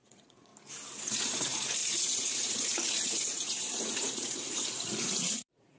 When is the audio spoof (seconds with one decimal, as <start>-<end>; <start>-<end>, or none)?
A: 0.0-0.5; 1.0-5.8